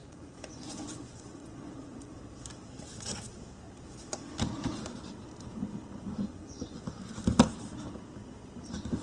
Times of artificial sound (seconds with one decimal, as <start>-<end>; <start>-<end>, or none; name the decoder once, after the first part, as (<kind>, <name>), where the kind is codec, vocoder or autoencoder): 0.0-2.1 (vocoder, Vocos); 6.3-6.8